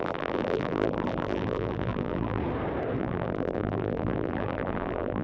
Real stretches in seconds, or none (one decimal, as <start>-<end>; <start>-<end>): 2.4-3.0